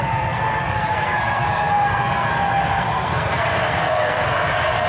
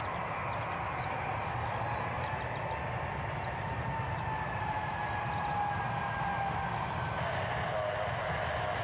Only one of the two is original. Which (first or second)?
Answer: second